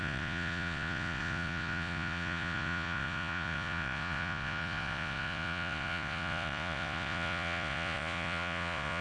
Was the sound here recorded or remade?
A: remade